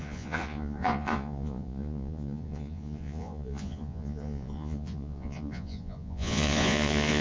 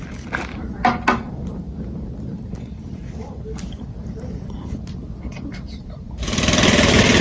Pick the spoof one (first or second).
first